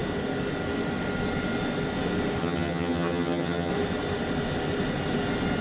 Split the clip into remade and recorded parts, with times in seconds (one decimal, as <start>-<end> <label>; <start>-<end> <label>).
0.0-2.4 recorded; 2.4-3.7 remade; 3.7-5.6 recorded

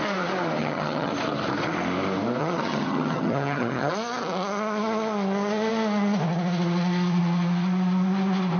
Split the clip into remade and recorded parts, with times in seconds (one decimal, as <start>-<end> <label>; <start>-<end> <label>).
0.0-0.6 recorded; 0.6-1.1 remade; 1.1-2.4 recorded; 2.4-3.9 remade; 3.9-8.6 recorded

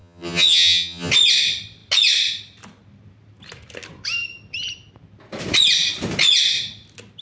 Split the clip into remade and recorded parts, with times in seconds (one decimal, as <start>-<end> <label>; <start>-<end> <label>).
0.0-1.1 remade; 1.1-7.2 recorded

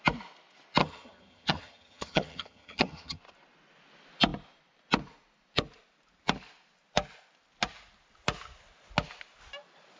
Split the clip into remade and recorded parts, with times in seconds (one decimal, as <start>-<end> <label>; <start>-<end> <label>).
0.0-0.8 recorded; 0.8-3.2 remade; 3.2-10.0 recorded

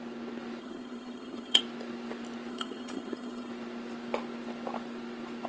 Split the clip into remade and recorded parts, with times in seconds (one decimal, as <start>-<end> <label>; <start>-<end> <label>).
0.0-0.6 recorded; 0.6-1.6 remade; 1.6-2.5 recorded; 2.5-3.5 remade; 3.5-5.5 recorded

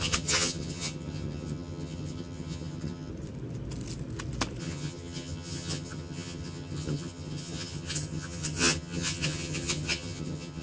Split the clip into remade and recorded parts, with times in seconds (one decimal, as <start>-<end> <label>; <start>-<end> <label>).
0.0-3.1 remade; 3.1-4.6 recorded; 4.6-10.6 remade

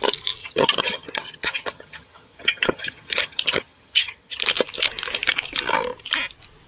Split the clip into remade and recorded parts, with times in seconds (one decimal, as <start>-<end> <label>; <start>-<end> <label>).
0.0-0.4 recorded; 0.4-4.4 remade; 4.4-6.7 recorded

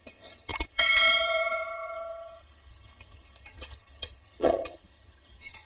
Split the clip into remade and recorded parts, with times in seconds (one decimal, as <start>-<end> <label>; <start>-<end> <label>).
0.0-5.7 remade